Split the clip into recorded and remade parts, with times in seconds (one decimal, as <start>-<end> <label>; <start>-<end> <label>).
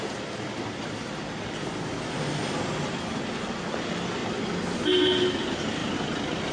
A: 0.0-6.5 recorded